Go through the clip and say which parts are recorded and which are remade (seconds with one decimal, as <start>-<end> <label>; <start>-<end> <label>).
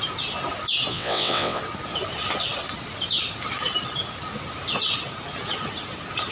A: 0.0-0.9 recorded; 0.9-1.6 remade; 1.6-6.3 recorded